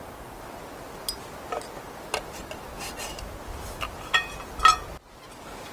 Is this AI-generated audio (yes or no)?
no